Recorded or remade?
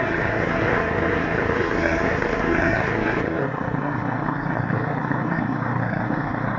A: remade